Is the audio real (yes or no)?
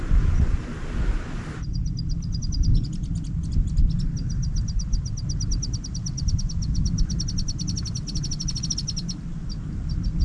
yes